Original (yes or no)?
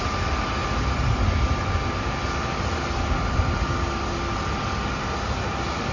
yes